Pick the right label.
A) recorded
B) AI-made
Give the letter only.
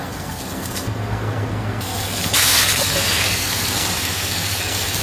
B